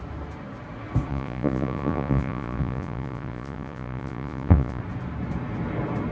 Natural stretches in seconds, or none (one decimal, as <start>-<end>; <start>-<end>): 0.0-1.1; 4.8-6.1